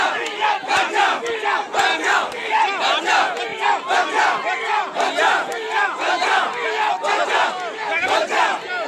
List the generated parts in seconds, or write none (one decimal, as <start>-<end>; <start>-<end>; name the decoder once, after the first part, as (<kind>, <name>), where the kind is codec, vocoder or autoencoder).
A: 1.9-2.5 (codec, DAC)

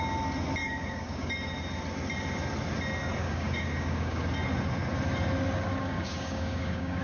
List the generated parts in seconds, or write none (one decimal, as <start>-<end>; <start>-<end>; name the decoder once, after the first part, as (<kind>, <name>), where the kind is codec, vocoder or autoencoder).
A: 0.6-1.3 (codec, DAC); 3.2-4.2; 5.8-7.0

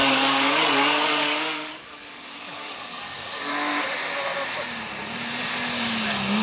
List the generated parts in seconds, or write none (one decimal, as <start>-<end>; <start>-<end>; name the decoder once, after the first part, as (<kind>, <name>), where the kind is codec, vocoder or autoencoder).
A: 0.0-3.5 (codec, DAC)

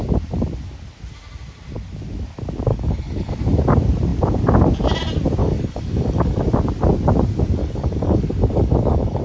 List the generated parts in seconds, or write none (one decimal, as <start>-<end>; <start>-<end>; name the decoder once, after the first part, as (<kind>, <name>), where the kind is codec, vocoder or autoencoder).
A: 2.7-3.3 (codec, DAC); 5.4-6.4; 7.6-9.2

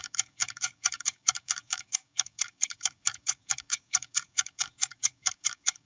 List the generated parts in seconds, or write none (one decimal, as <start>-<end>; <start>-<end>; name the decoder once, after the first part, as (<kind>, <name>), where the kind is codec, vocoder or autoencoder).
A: 0.0-5.9 (codec, DAC)

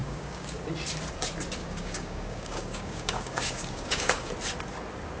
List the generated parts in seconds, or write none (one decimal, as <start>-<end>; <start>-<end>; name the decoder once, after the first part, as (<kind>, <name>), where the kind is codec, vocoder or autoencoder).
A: 0.0-0.6 (codec, DAC); 1.6-4.3

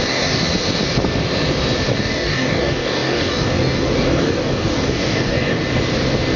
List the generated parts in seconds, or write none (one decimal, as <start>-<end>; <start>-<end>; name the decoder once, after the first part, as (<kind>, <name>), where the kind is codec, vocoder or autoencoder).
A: 0.0-0.5 (codec, DAC); 1.9-5.6